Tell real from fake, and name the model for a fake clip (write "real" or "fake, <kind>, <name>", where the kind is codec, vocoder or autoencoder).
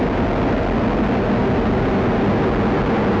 real